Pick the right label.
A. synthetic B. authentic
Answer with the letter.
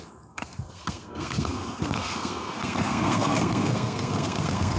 A